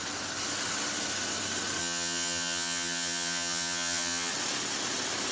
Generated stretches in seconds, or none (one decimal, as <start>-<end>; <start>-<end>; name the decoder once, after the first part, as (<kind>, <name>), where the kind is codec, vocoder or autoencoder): 1.8-4.3 (vocoder, HiFi-GAN)